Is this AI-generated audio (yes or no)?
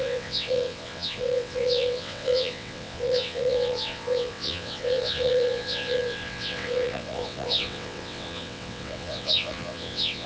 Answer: yes